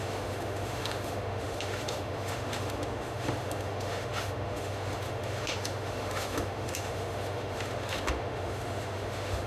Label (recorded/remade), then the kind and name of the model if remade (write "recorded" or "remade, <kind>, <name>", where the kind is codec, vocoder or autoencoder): remade, autoencoder, DAC-VAE